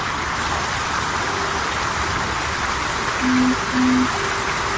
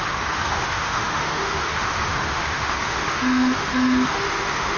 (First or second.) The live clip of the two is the first